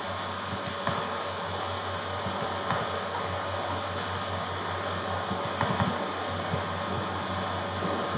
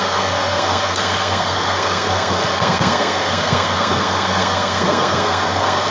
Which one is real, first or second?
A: first